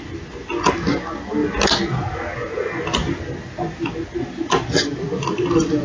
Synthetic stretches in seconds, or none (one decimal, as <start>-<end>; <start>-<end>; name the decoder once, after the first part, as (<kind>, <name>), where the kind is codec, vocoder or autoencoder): none